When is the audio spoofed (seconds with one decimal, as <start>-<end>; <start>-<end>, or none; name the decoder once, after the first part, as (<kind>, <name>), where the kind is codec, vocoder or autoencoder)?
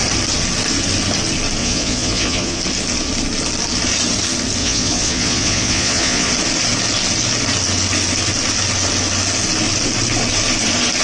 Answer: 1.6-2.6 (vocoder, Vocos); 4.6-6.3